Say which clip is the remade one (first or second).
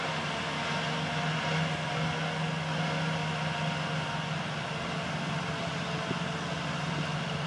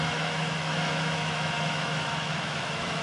second